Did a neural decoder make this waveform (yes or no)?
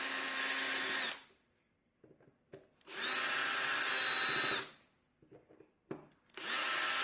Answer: no